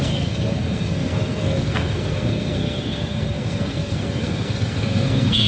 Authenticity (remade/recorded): remade